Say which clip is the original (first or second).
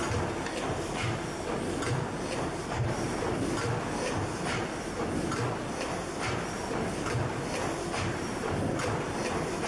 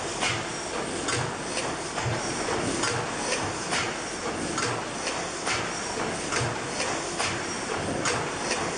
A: second